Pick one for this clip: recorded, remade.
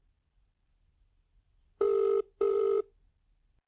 remade